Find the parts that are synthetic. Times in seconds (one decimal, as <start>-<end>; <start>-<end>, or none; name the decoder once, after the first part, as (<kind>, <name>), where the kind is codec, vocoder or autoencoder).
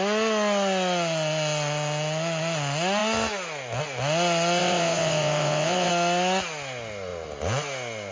4.6-5.9 (vocoder, WaveNeXt)